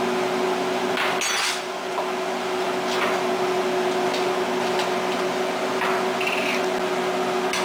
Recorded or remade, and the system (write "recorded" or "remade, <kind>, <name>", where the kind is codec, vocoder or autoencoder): recorded